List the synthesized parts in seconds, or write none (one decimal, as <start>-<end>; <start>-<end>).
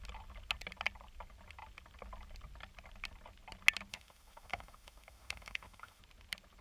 3.9-6.0